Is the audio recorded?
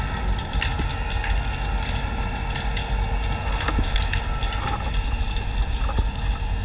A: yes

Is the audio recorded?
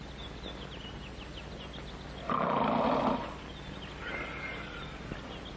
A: yes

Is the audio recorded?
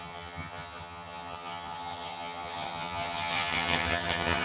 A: no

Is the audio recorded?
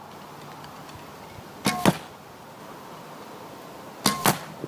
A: yes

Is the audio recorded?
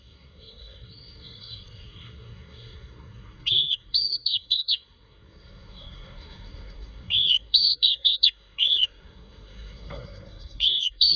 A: no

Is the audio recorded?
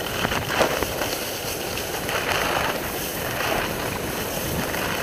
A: no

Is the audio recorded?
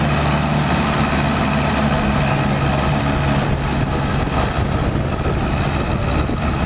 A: yes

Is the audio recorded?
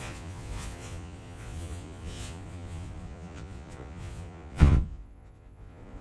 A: no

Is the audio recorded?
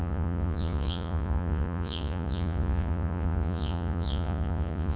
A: no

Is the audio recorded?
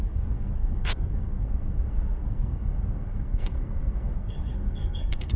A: no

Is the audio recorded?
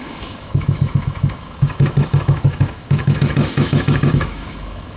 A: no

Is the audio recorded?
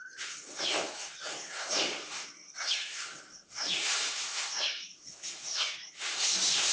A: no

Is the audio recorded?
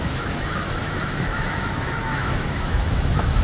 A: no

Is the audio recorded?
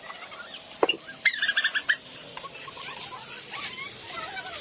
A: yes